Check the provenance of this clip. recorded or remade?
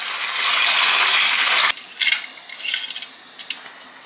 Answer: recorded